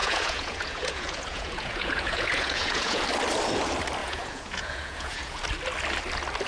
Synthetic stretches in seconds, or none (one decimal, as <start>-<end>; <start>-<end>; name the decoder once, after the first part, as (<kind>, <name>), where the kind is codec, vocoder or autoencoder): 0.0-3.0 (vocoder, Vocos); 4.0-5.4